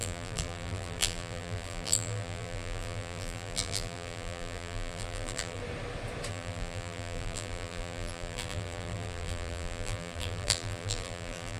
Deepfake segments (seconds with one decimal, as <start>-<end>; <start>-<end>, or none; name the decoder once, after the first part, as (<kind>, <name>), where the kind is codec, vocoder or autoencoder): 0.0-5.6 (vocoder, BigVGAN v2); 6.3-11.6